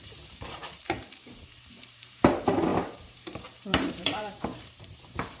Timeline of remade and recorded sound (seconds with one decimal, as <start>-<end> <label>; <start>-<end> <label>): 0.0-5.4 remade